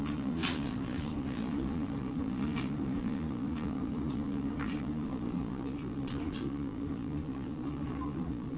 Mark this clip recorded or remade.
remade